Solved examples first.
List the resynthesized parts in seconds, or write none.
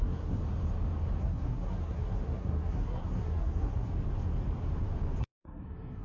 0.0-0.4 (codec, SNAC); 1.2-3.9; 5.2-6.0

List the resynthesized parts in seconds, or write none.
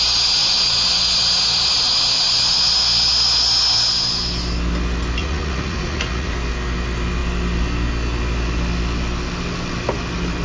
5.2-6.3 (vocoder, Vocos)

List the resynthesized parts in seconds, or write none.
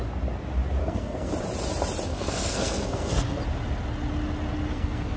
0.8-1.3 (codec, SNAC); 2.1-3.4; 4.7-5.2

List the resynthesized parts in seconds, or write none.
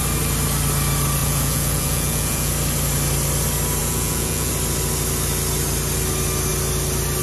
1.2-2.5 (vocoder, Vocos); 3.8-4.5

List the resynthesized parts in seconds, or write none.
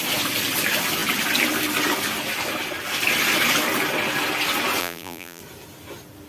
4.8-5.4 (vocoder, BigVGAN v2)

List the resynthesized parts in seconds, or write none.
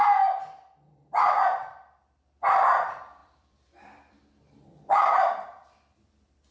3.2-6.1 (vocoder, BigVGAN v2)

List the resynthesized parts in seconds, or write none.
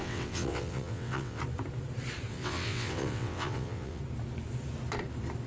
0.0-1.4 (vocoder, WaveNeXt); 2.3-4.0